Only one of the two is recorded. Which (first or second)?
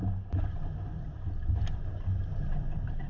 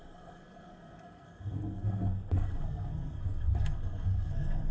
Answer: first